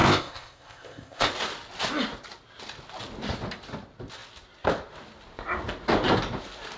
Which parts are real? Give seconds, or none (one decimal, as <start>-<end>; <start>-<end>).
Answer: 1.3-6.8